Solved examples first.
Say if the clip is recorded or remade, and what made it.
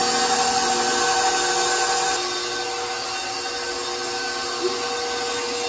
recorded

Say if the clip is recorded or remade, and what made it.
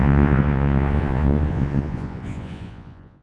remade, vocoder, Vocos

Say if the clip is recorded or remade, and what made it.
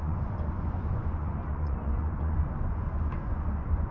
remade, vocoder, Vocos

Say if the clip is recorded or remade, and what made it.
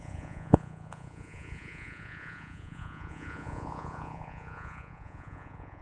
remade, vocoder, Vocos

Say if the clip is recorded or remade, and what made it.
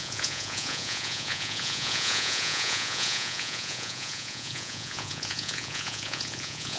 remade, vocoder, Vocos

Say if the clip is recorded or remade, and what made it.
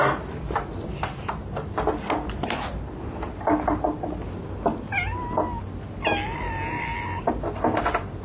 recorded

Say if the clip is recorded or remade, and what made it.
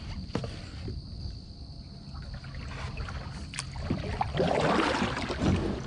recorded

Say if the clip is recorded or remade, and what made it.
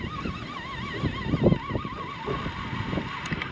recorded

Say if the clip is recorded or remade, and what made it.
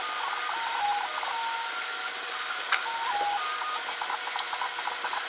recorded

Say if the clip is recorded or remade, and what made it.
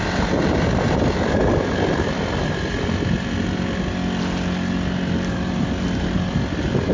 recorded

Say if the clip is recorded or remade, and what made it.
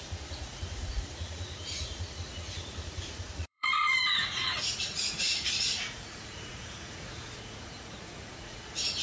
remade, vocoder, Vocos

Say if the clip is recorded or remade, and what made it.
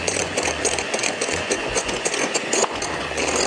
remade, vocoder, Vocos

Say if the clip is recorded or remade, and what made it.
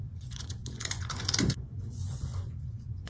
remade, vocoder, Vocos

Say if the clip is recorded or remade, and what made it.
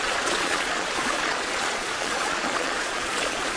remade, vocoder, Vocos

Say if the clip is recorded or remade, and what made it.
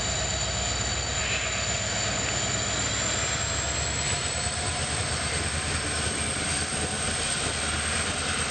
recorded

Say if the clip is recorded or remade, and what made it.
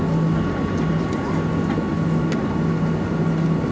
recorded